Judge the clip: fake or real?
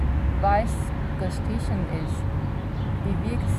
real